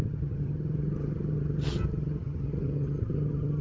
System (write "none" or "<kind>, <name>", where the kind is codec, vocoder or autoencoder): vocoder, HiFi-GAN